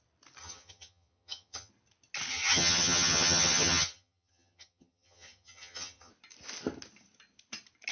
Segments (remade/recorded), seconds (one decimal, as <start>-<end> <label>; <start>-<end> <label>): 0.0-0.4 recorded; 0.4-1.7 remade; 1.7-2.3 recorded; 2.3-6.1 remade; 6.1-7.9 recorded

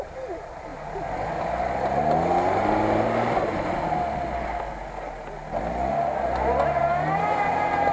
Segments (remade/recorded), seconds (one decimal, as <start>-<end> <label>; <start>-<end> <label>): 0.0-7.9 recorded

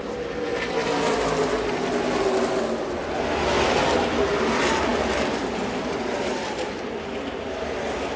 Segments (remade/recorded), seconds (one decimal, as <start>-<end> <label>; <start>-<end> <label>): 0.0-8.2 recorded

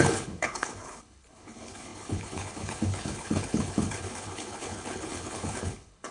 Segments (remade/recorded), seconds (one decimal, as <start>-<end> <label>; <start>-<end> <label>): 0.0-6.1 remade

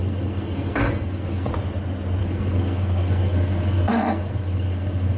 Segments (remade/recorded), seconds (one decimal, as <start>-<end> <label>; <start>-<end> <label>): 0.0-1.5 remade; 1.5-2.2 recorded; 2.2-5.2 remade

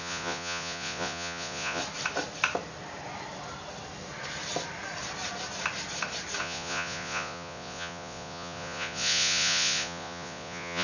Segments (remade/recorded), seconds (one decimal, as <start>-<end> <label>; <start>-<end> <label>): 0.0-1.8 remade; 1.8-6.4 recorded; 6.4-10.8 remade